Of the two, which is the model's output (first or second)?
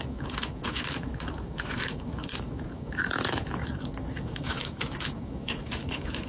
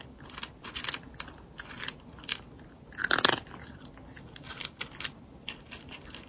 first